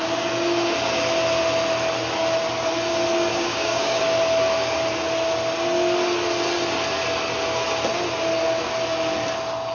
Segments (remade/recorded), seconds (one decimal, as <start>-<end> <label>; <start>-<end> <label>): 0.0-3.3 recorded; 3.3-4.0 remade; 4.0-9.7 recorded